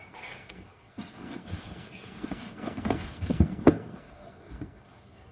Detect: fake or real fake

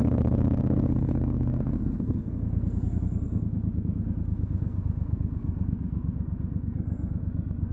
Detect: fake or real fake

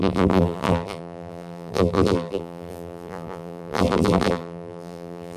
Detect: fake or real fake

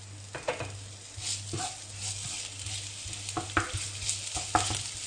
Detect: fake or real real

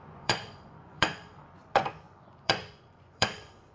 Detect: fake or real fake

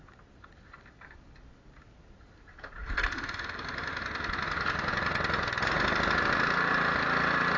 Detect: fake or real real